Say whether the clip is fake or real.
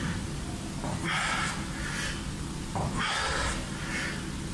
real